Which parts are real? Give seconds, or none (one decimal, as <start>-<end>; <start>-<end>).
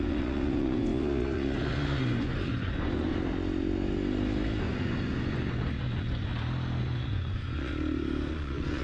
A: 3.1-4.6; 6.3-6.8; 7.7-8.3